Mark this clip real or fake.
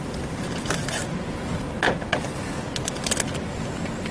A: real